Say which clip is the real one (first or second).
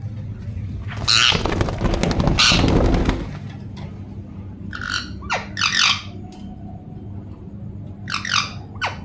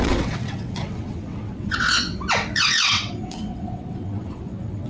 first